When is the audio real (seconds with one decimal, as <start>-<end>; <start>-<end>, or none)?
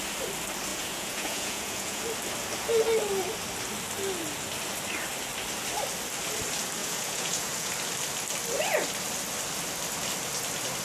0.0-0.7; 2.0-6.8; 7.7-10.8